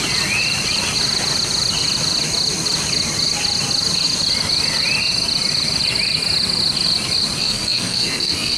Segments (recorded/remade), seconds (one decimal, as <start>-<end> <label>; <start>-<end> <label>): 0.0-7.4 recorded; 7.4-8.6 remade